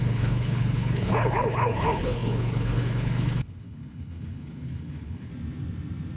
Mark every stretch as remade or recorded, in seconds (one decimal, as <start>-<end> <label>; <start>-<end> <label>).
0.0-5.3 remade; 5.3-6.2 recorded